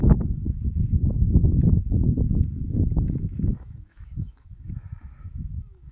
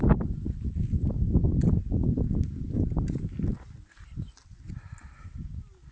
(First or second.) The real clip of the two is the second